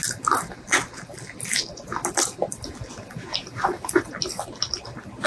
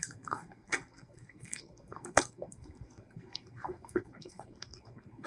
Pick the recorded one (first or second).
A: first